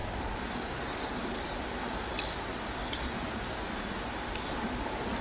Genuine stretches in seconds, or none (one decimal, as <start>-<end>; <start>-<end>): 0.0-5.2